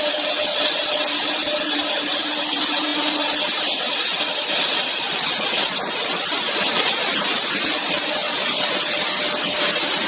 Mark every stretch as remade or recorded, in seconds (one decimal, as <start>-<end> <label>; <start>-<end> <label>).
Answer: 0.0-10.1 recorded

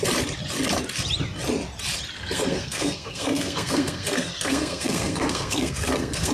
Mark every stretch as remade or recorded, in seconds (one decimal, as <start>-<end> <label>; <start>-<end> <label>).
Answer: 0.0-2.2 recorded; 2.2-6.3 remade